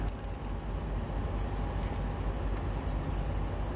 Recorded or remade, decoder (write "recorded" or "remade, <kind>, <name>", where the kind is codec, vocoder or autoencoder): recorded